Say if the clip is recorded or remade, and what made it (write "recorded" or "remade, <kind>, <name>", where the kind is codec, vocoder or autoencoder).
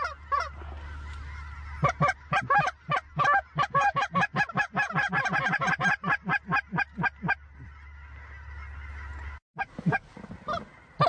recorded